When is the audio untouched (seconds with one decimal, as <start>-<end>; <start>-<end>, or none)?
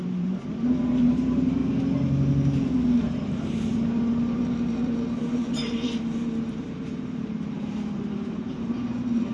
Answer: 1.6-3.0